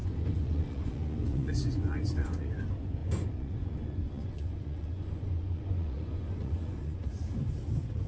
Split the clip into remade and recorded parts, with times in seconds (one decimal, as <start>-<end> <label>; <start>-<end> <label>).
0.0-2.5 remade; 2.5-3.0 recorded; 3.0-7.1 remade; 7.1-8.1 recorded